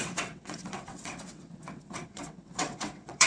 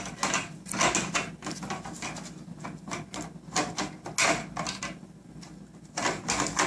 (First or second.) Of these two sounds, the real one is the second